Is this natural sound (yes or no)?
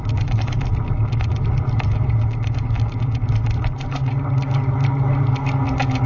yes